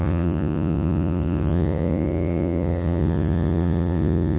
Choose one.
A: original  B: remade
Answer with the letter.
B